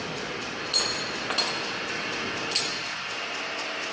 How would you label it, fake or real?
real